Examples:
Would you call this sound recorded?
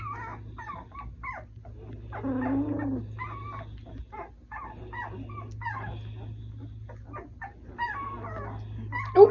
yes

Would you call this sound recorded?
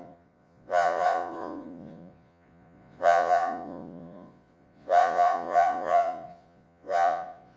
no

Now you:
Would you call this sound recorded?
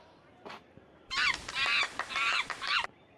no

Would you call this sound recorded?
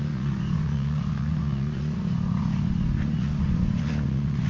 no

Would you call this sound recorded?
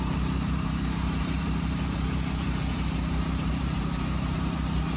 no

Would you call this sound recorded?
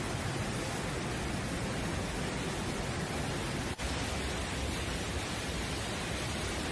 yes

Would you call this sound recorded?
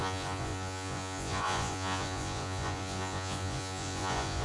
no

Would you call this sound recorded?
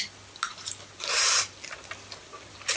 yes